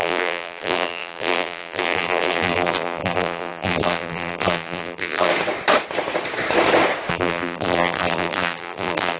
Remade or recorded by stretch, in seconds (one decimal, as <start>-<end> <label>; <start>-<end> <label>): 0.0-5.3 remade; 5.3-7.1 recorded; 7.1-9.2 remade